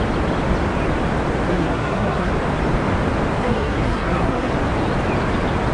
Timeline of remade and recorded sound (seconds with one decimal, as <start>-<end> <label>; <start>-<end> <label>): 0.0-1.5 recorded; 1.5-2.3 remade; 2.3-3.4 recorded; 3.4-4.5 remade; 4.5-5.7 recorded